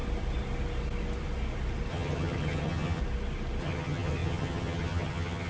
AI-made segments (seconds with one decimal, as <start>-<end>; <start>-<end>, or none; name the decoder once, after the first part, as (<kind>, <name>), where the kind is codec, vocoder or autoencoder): 1.9-3.0 (vocoder, HiFi-GAN); 3.6-5.5